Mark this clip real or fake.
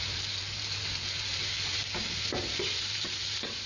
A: fake